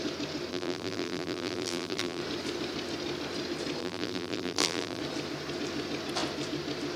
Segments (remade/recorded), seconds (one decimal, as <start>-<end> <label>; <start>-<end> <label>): 0.0-0.5 recorded; 0.5-2.2 remade; 2.2-3.8 recorded; 3.8-5.0 remade; 5.0-7.0 recorded